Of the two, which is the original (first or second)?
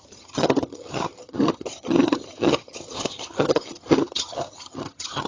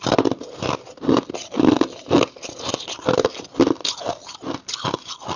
second